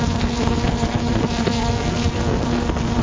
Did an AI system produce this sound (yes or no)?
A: yes